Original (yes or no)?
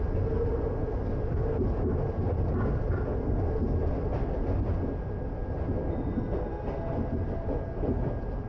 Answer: yes